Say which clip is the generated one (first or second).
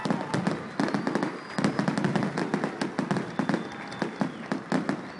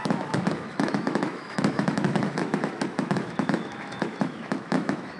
second